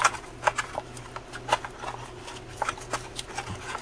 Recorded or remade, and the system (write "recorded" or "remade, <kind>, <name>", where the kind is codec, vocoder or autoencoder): recorded